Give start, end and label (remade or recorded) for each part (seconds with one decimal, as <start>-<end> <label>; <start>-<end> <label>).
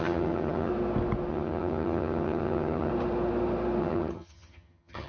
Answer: 0.0-0.7 remade; 0.7-1.3 recorded; 1.3-2.9 remade; 2.9-3.8 recorded; 3.8-5.1 remade